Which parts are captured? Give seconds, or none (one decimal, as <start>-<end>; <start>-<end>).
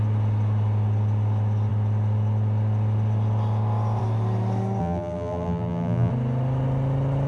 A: 0.0-4.8; 6.1-7.3